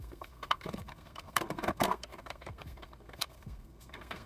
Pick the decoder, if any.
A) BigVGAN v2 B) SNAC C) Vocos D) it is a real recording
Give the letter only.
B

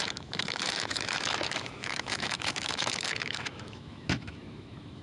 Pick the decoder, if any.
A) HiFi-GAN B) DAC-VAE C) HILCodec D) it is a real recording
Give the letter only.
B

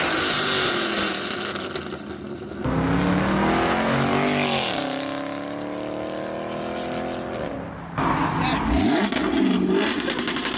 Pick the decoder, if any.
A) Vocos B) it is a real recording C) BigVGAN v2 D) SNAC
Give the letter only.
B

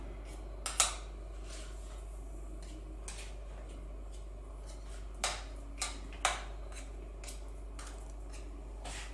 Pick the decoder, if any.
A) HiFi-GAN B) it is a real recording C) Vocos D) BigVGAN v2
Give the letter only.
B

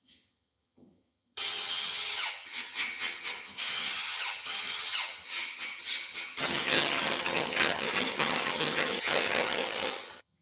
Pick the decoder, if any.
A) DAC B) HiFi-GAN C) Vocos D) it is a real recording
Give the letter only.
B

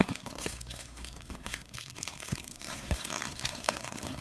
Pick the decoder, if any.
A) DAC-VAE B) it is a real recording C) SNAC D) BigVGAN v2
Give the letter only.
C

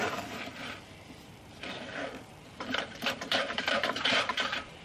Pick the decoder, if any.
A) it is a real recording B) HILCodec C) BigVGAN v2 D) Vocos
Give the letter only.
C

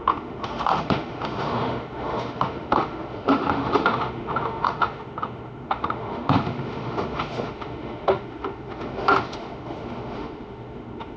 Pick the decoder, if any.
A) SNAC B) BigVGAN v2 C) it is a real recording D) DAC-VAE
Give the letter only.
D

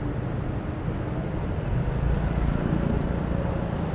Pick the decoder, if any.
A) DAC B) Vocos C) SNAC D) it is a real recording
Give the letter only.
D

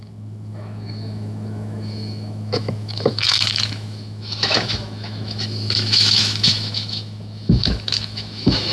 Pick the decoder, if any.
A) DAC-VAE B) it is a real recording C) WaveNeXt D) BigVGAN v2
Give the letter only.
A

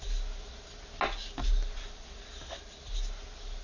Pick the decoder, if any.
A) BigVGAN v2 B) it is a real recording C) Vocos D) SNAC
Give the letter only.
B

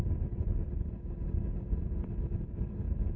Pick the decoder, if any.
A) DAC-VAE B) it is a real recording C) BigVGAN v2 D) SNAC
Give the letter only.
C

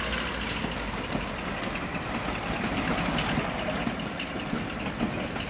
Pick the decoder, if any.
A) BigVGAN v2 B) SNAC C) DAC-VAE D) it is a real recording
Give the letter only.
D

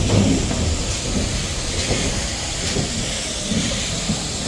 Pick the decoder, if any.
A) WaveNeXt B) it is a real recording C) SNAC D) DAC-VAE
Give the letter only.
B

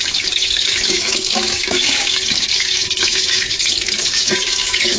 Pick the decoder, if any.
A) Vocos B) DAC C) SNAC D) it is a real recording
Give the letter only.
B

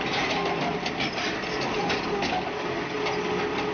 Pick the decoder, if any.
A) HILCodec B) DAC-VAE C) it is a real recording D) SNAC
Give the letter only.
C